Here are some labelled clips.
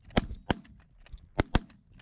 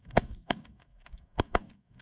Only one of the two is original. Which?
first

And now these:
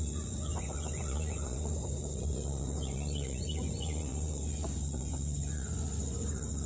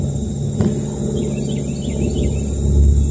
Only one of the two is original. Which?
second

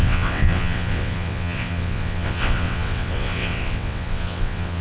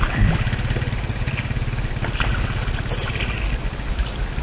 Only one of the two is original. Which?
second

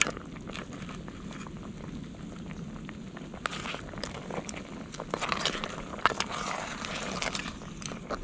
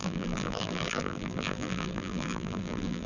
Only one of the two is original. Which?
first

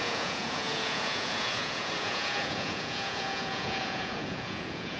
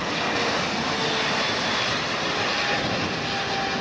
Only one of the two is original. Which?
second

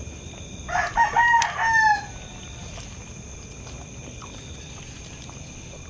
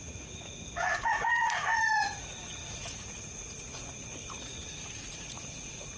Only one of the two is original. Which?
first